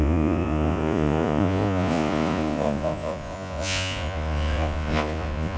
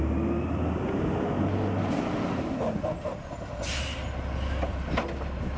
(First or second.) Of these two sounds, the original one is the second